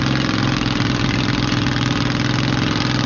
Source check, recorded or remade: recorded